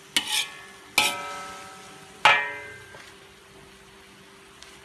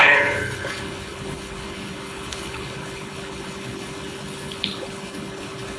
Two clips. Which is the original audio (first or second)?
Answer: first